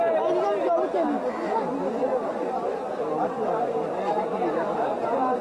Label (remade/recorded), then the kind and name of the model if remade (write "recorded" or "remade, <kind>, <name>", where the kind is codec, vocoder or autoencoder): recorded